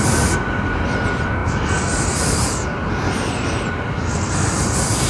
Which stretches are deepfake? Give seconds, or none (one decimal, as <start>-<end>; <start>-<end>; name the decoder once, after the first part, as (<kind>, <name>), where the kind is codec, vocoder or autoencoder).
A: none

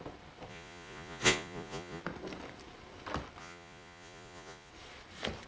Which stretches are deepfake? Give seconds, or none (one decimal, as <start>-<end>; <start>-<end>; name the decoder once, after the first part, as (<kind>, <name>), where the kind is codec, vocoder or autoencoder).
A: 0.5-2.0 (vocoder, Vocos); 3.4-4.7

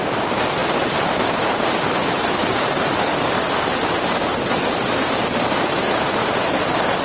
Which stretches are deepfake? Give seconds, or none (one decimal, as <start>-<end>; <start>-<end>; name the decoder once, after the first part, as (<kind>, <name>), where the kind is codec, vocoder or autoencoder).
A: 0.0-7.0 (vocoder, BigVGAN v2)

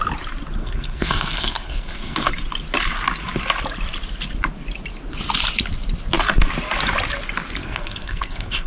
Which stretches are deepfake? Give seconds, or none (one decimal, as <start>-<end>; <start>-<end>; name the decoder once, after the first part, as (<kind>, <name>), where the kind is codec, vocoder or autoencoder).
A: 0.6-2.3 (codec, SNAC); 7.6-8.7

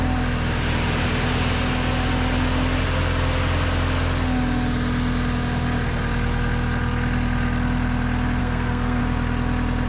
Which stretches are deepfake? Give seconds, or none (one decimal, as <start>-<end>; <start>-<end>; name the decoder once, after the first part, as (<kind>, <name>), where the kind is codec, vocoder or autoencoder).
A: 8.4-9.0 (codec, SNAC)

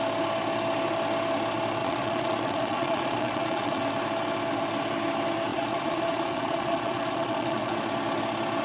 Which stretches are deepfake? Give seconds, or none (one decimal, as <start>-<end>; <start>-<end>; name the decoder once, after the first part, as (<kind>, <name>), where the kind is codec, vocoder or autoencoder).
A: 1.8-3.8 (vocoder, Vocos); 5.5-7.7

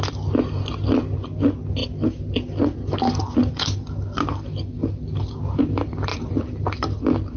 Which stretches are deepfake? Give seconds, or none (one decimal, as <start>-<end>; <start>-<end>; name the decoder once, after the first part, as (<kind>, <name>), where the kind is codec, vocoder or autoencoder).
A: 6.1-7.0 (vocoder, BigVGAN v2)